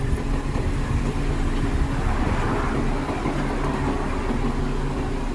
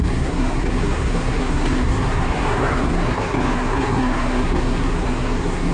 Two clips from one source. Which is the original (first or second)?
first